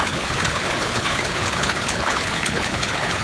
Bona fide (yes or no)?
no